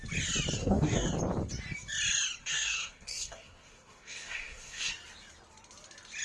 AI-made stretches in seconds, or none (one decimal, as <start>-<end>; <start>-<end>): 0.6-1.1; 2.4-4.9